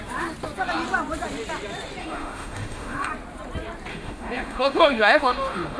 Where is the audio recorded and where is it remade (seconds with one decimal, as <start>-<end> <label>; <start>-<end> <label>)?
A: 0.0-2.0 recorded; 2.0-3.1 remade; 3.1-3.9 recorded; 3.9-5.8 remade